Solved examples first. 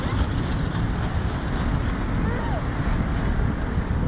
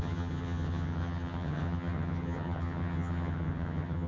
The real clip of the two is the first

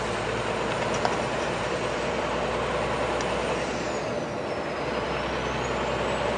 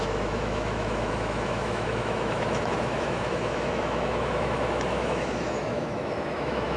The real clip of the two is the first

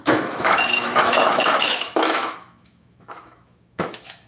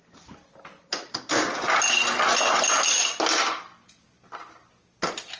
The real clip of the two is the second